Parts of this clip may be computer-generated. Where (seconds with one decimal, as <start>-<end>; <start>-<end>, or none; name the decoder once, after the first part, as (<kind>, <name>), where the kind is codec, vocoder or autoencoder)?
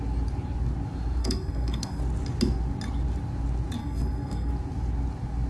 1.2-2.0 (codec, SNAC); 3.8-4.5